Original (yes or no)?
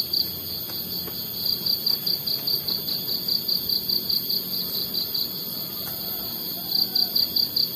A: yes